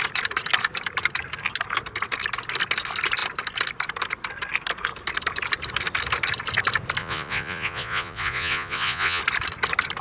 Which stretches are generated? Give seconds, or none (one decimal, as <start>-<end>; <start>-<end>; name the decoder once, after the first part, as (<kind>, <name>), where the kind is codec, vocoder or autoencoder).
7.0-9.2 (vocoder, Vocos)